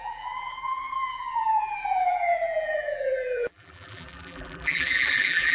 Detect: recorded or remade remade